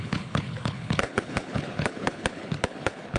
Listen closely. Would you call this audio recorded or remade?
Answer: remade